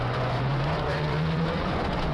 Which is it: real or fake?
fake